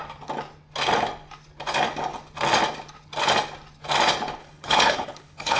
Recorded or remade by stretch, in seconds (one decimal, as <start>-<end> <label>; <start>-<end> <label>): 0.0-4.4 recorded; 4.4-5.6 remade